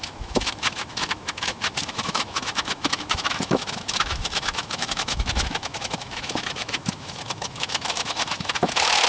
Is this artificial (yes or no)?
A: yes